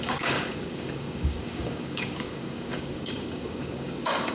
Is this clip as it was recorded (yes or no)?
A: no